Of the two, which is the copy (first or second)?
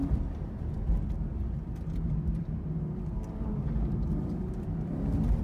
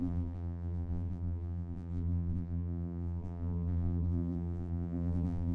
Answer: second